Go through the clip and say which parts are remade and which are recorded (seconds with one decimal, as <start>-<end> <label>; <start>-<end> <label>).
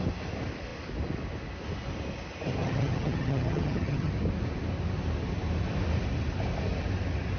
0.0-2.6 recorded; 2.6-4.1 remade; 4.1-7.4 recorded